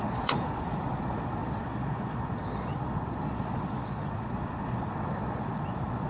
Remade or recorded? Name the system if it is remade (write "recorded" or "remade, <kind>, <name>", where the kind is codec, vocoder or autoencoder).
remade, vocoder, Vocos